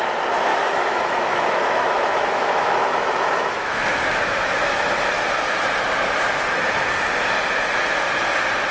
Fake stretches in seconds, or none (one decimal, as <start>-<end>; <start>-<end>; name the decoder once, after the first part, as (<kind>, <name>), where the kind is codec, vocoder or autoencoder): 0.5-4.9 (autoencoder, DAC-VAE)